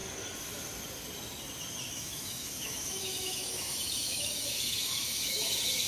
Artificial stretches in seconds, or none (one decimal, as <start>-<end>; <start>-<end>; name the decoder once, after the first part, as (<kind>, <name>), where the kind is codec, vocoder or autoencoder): 1.9-5.9 (autoencoder, DAC-VAE)